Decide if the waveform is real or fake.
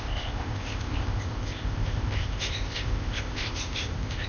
fake